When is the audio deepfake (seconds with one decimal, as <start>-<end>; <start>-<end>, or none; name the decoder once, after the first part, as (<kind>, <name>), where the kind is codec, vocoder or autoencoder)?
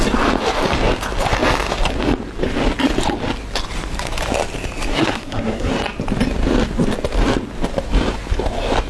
4.9-5.7 (codec, SNAC)